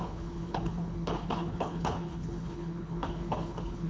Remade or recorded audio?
remade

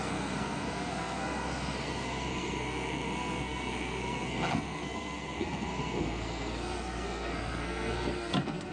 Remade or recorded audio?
remade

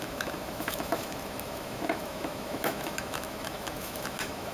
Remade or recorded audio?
remade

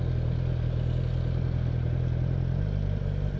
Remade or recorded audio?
recorded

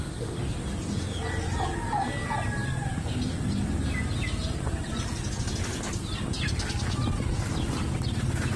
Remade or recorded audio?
recorded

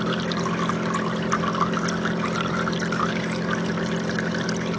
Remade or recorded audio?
remade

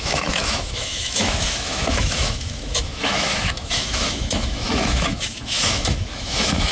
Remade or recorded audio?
remade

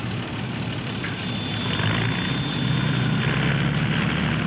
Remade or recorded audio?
recorded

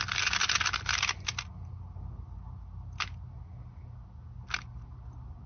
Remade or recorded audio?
recorded